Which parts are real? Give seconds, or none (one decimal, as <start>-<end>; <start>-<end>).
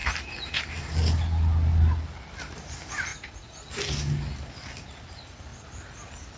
0.0-3.1; 3.7-6.4